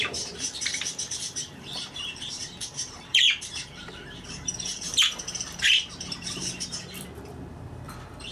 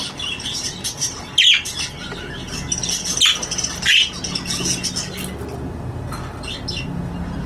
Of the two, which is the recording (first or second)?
second